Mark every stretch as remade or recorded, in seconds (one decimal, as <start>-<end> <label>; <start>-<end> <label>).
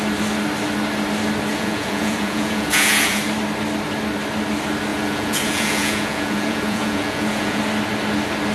0.0-1.5 recorded; 1.5-3.2 remade; 3.2-4.9 recorded; 4.9-7.6 remade; 7.6-8.5 recorded